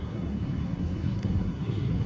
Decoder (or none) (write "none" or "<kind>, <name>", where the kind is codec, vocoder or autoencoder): codec, SNAC